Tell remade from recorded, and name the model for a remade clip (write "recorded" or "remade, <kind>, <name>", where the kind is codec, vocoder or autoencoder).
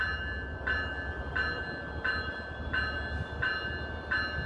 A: recorded